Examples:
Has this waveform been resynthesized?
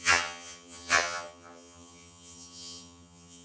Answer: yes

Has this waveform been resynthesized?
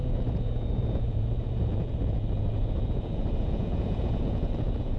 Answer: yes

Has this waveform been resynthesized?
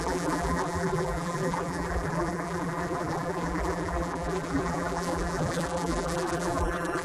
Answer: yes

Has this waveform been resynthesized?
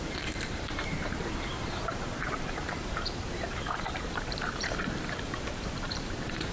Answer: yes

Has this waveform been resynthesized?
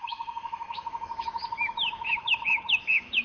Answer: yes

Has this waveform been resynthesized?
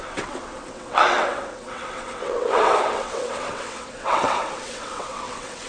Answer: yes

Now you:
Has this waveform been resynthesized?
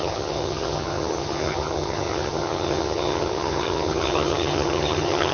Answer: yes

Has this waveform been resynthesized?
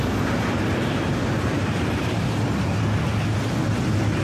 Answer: no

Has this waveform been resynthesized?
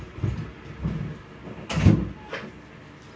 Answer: no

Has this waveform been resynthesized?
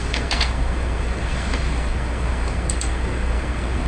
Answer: yes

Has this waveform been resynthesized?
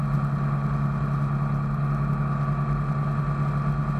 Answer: no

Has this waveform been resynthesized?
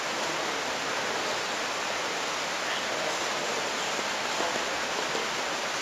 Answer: no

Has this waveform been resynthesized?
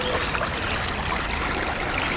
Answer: no